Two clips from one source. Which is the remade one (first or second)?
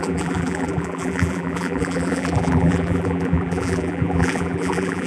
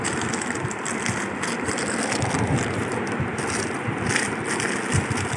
first